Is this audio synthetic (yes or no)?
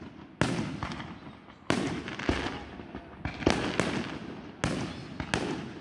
no